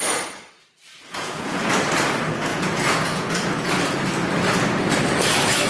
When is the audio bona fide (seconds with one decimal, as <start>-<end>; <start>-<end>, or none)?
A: 0.0-1.1; 1.6-2.5; 3.3-5.7